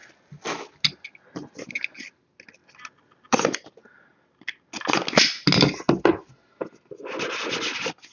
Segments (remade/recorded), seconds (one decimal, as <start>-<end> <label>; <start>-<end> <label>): 0.0-8.1 recorded